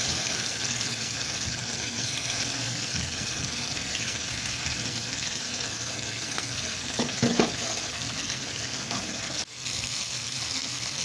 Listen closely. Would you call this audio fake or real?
fake